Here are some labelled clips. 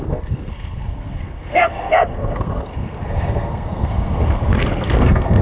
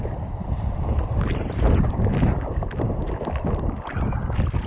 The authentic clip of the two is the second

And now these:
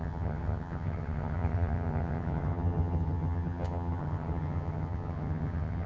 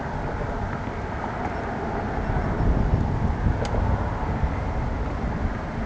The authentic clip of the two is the second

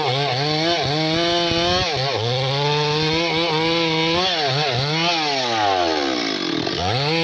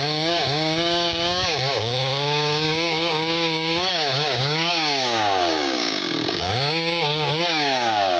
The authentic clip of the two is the first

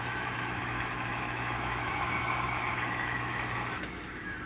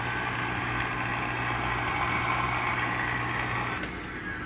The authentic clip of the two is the second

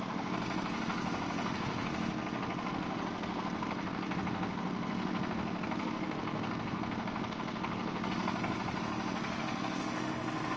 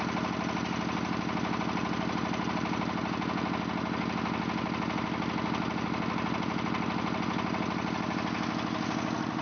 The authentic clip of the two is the second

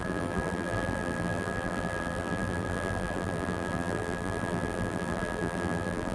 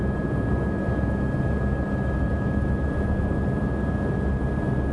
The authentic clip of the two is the second